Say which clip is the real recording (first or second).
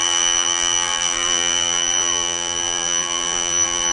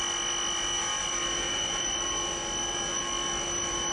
second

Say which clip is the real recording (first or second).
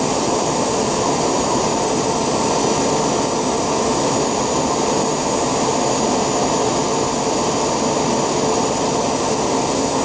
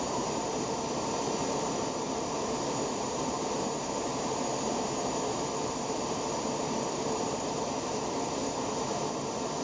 first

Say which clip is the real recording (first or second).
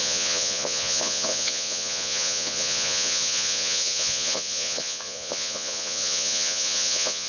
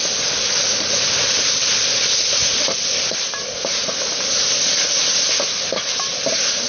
second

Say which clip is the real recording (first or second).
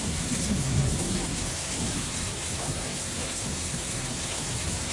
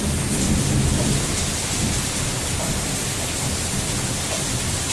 second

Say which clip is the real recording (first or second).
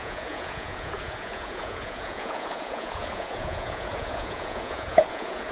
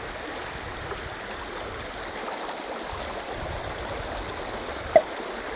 second